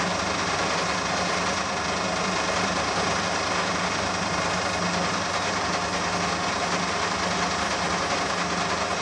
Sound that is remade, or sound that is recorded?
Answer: recorded